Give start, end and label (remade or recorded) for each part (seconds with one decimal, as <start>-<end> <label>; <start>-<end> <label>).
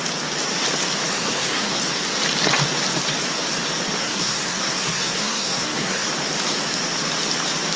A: 0.0-1.1 recorded; 1.1-1.8 remade; 1.8-4.0 recorded; 4.0-6.1 remade; 6.1-7.8 recorded